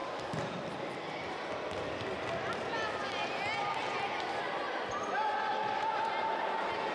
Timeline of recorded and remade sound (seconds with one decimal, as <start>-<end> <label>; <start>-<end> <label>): 0.0-6.9 recorded